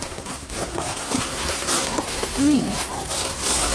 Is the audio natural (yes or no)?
no